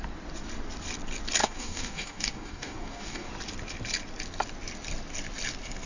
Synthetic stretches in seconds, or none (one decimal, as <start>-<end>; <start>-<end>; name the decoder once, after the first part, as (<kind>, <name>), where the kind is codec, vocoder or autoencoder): 1.4-3.3 (codec, DAC)